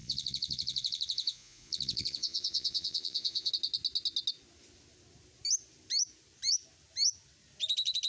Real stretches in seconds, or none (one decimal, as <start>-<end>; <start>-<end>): 3.5-8.1